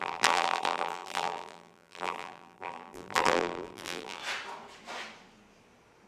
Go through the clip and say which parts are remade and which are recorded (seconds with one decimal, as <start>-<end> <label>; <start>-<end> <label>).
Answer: 0.0-4.2 remade; 4.2-6.1 recorded